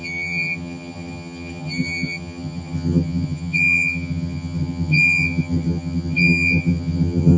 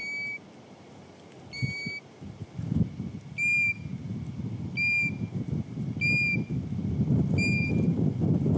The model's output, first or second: first